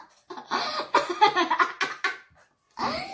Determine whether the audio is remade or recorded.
recorded